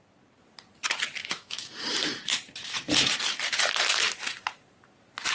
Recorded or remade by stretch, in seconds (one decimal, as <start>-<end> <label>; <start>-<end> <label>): 0.0-1.2 recorded; 1.2-1.7 remade; 1.7-5.3 recorded